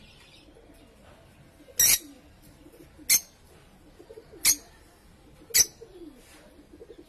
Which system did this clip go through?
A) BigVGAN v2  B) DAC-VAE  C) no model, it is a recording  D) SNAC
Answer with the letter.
C